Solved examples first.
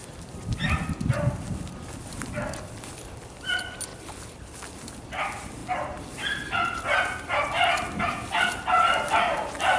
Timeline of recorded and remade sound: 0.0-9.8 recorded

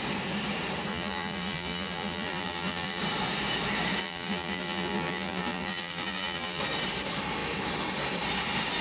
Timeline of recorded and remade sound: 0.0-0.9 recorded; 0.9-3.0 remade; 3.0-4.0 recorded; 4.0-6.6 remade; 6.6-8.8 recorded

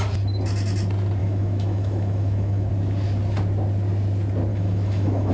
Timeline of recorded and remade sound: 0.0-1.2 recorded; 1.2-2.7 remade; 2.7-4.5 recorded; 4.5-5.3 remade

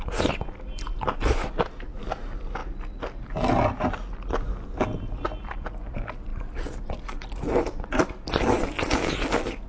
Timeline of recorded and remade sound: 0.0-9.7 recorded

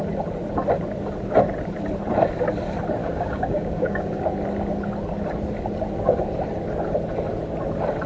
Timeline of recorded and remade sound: 0.0-3.0 recorded; 3.0-4.2 remade; 4.2-8.1 recorded